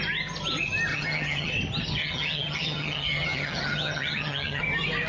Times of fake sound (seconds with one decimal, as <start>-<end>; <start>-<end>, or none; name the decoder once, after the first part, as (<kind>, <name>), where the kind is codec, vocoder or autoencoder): 0.9-1.5 (vocoder, HiFi-GAN); 2.0-4.6